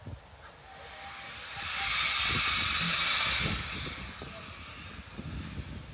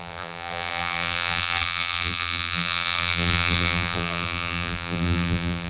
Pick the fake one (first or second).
second